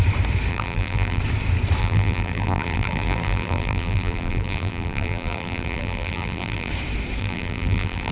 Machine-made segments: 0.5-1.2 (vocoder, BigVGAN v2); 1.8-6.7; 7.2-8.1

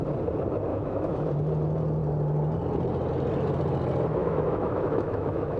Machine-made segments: 0.7-1.3 (autoencoder, DAC-VAE); 4.2-5.6

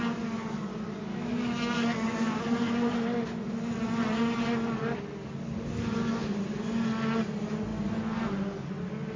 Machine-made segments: 1.1-2.4 (autoencoder, DAC-VAE)

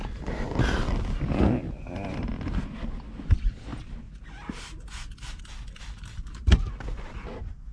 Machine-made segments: none

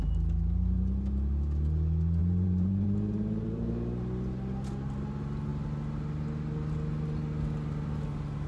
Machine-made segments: 2.2-3.7 (vocoder, BigVGAN v2)

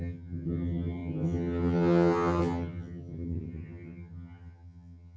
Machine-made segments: 0.0-5.2 (vocoder, HiFi-GAN)